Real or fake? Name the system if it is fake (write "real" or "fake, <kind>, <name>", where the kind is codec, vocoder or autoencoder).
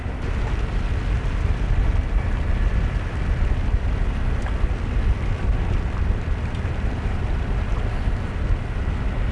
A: fake, vocoder, BigVGAN v2